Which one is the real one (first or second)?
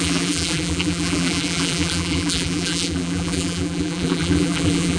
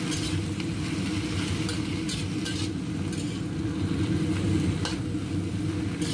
second